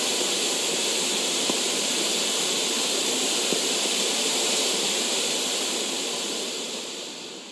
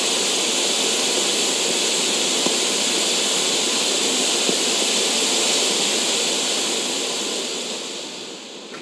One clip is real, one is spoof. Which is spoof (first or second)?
first